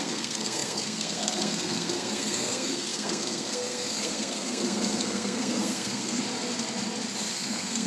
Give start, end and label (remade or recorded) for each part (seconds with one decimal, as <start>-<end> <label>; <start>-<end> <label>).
0.0-6.2 remade; 6.2-7.3 recorded; 7.3-7.9 remade

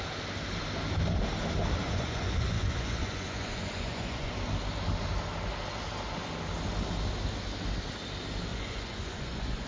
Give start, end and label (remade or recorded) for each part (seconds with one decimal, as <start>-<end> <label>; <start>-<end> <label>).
0.0-1.8 recorded; 1.8-4.3 remade; 4.3-8.5 recorded; 8.5-9.7 remade

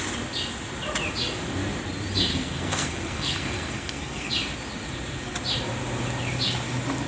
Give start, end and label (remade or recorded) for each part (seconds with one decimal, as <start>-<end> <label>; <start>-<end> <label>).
0.0-2.3 recorded; 2.3-4.3 remade; 4.3-7.1 recorded